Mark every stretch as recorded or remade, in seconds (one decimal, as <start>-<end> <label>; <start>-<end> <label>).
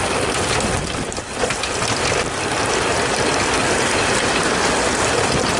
0.0-5.6 recorded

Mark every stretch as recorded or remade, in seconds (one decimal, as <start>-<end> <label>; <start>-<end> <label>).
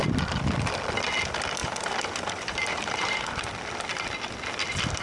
0.0-1.6 recorded; 1.6-3.3 remade; 3.3-5.0 recorded